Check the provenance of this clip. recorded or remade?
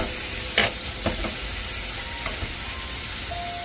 recorded